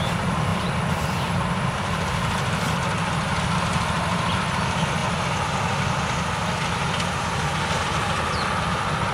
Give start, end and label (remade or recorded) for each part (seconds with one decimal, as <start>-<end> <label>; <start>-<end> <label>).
0.0-9.1 recorded